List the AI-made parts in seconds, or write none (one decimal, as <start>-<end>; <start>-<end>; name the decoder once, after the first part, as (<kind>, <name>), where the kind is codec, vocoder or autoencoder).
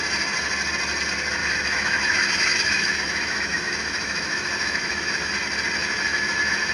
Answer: 1.4-5.3 (autoencoder, DAC-VAE); 5.8-6.7